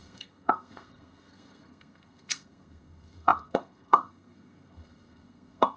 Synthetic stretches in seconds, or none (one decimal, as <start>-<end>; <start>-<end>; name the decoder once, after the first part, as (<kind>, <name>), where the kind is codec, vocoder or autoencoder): 0.0-5.8 (codec, SNAC)

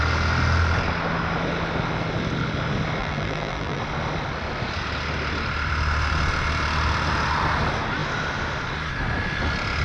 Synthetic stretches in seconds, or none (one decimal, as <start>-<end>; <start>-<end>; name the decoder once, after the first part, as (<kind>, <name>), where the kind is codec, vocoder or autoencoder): 3.0-3.8 (vocoder, BigVGAN v2)

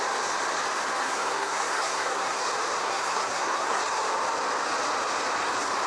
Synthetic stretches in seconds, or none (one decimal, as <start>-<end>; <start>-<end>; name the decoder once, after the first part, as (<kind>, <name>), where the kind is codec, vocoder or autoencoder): 1.0-2.4 (codec, SNAC); 2.8-3.8

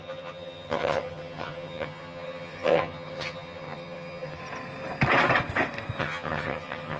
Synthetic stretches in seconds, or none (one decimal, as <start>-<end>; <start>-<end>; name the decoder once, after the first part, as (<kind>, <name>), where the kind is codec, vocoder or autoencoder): 0.0-4.4 (vocoder, HiFi-GAN); 6.0-7.0

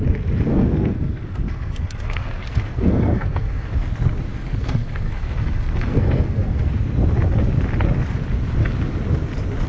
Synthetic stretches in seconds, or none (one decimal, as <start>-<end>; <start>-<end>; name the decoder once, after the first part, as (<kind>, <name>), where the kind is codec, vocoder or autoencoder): 0.5-3.9 (codec, SNAC); 4.3-6.7

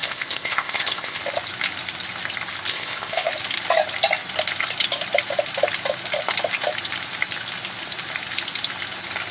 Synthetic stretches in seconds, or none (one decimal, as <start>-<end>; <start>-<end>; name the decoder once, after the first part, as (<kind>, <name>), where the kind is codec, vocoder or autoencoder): 0.0-1.2 (codec, ZipCodec); 2.7-3.3

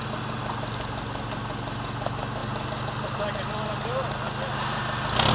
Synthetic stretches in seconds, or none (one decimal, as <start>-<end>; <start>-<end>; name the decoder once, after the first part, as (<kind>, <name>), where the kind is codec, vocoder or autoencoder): none

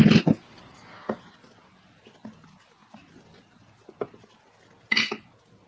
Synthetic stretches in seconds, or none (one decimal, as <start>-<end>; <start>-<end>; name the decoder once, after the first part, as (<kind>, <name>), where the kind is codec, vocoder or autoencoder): none